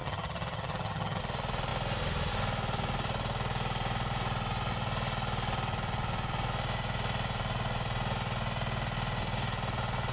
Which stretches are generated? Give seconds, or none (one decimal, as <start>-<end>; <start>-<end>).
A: 0.0-1.2

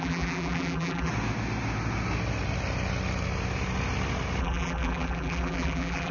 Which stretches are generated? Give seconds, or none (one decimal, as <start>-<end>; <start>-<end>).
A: 0.0-1.1; 4.4-6.1

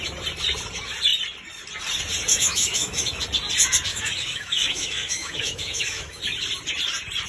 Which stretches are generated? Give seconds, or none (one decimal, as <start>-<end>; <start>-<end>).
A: 2.3-3.2; 3.9-6.2